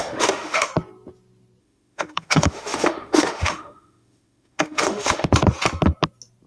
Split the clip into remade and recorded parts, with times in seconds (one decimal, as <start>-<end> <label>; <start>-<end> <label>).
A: 0.0-0.7 remade; 0.7-1.6 recorded; 1.6-5.3 remade; 5.3-6.5 recorded

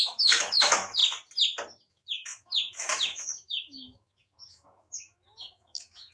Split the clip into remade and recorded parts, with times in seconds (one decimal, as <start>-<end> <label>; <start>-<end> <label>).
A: 0.0-1.0 remade; 1.0-1.9 recorded; 1.9-6.1 remade

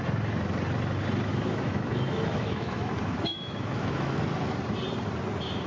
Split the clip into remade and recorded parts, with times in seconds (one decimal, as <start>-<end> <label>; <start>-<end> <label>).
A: 0.0-1.3 recorded; 1.3-4.2 remade; 4.2-5.7 recorded